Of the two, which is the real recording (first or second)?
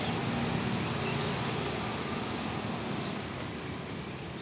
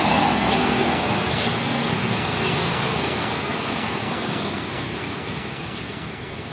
first